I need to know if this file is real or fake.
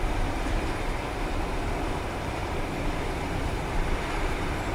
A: fake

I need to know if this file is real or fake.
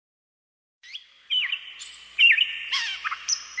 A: real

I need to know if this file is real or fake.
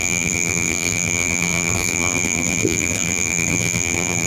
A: fake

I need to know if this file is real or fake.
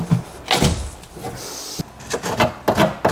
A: real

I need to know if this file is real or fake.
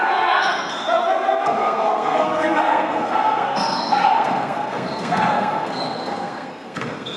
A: fake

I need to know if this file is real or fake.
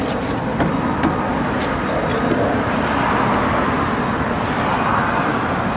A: real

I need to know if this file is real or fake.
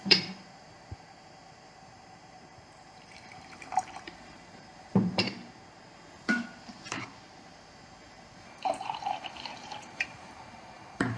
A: fake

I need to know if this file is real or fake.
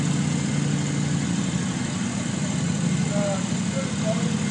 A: real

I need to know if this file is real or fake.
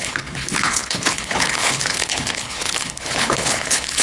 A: fake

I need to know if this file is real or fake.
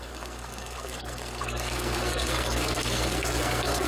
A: fake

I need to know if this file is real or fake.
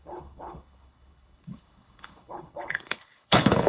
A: fake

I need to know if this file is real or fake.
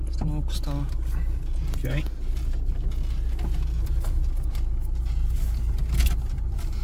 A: real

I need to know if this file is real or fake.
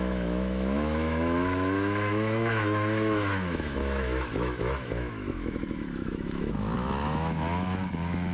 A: fake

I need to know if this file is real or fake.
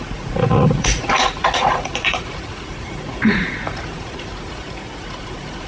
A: fake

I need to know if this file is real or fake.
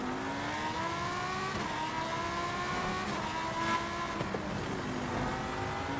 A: real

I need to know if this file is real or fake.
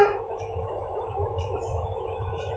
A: fake